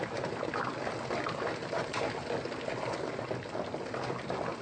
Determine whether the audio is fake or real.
real